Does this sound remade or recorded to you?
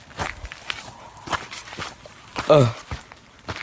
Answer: recorded